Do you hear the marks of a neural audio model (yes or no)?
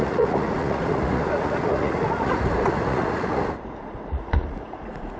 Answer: yes